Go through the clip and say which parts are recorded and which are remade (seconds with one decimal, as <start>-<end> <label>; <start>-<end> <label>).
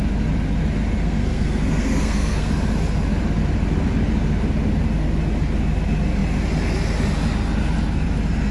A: 0.0-1.0 recorded; 1.0-2.5 remade; 2.5-8.5 recorded